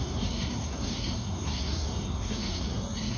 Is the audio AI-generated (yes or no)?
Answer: yes